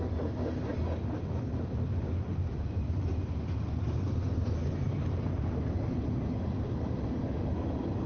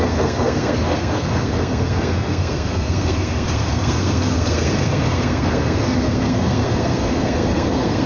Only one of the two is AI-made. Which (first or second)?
second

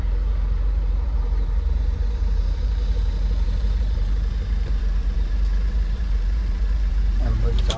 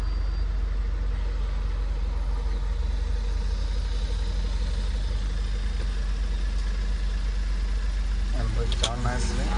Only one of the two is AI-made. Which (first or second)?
first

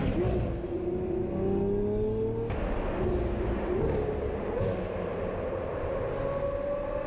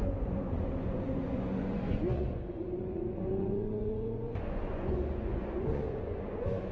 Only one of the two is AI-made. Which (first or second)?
second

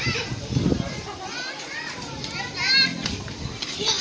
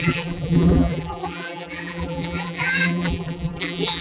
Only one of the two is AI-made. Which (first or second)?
second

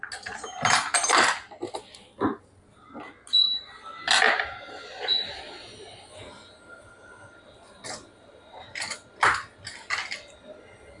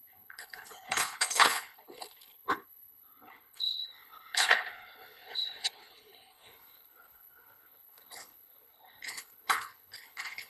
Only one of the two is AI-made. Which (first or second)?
second